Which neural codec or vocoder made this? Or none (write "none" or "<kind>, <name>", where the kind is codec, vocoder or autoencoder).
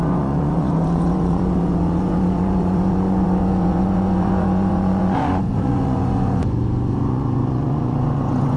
vocoder, Vocos